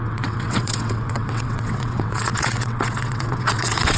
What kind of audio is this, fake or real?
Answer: fake